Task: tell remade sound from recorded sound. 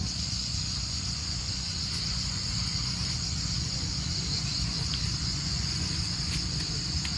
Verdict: remade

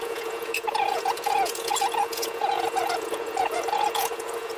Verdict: remade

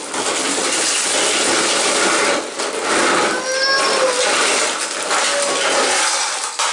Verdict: recorded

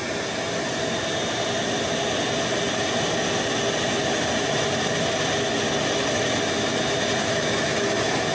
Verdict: recorded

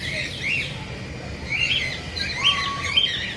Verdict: recorded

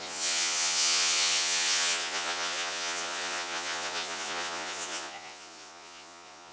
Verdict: remade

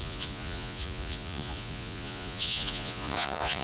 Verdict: remade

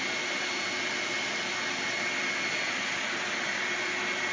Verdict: recorded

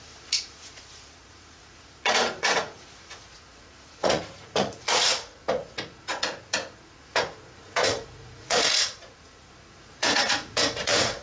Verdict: remade